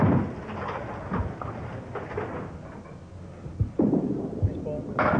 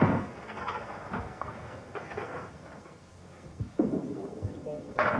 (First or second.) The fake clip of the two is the second